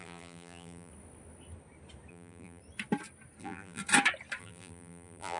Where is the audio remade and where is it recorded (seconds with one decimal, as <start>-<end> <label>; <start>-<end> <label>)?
0.0-0.9 remade; 0.9-2.1 recorded; 2.1-2.6 remade; 2.6-3.4 recorded; 3.4-3.8 remade; 3.8-4.4 recorded; 4.4-5.4 remade